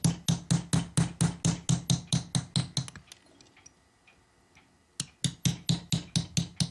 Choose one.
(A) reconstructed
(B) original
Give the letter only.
B